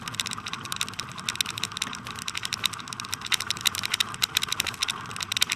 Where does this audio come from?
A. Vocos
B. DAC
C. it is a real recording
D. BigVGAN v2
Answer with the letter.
C